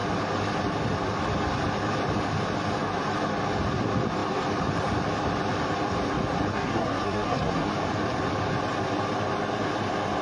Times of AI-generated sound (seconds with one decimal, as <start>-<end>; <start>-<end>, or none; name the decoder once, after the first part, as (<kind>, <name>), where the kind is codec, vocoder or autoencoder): 6.5-7.7 (codec, SNAC)